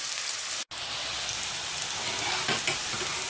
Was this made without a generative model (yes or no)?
yes